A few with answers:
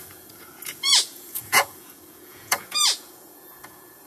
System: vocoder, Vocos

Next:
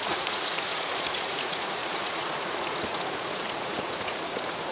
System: vocoder, Vocos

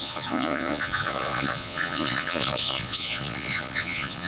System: vocoder, Vocos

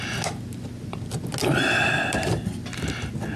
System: none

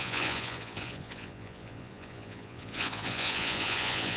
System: vocoder, Vocos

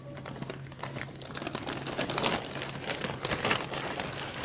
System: none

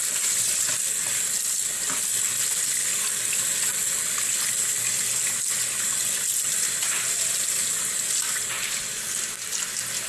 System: none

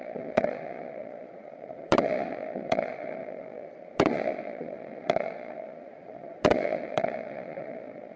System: vocoder, Vocos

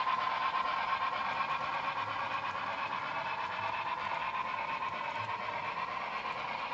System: none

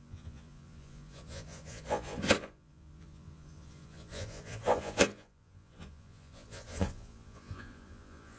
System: vocoder, Vocos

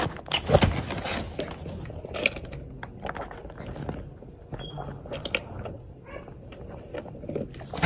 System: none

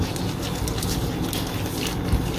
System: none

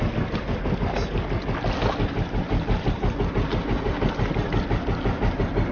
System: none